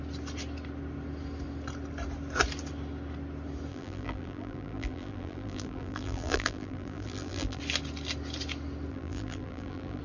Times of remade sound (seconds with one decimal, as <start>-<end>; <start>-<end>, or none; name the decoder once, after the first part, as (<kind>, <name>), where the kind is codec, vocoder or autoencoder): 3.7-7.6 (vocoder, BigVGAN v2); 8.9-10.0